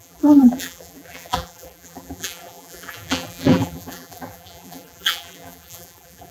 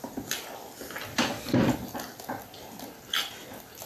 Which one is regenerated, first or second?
first